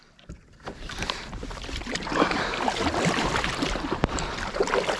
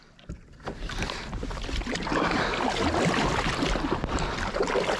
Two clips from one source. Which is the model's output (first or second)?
first